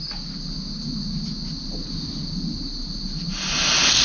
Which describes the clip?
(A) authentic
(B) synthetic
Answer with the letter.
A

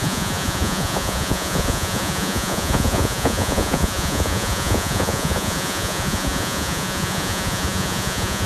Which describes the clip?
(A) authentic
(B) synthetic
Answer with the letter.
B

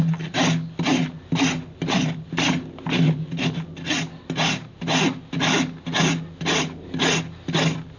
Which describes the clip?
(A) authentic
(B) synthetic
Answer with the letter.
A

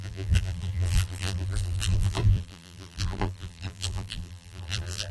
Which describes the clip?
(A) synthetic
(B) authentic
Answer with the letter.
A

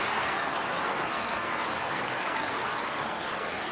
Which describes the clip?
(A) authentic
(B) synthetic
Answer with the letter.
B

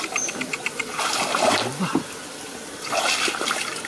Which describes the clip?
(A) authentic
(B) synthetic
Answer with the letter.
A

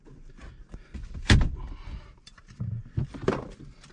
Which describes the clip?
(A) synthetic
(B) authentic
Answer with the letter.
A